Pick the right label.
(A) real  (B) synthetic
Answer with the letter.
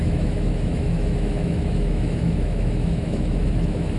B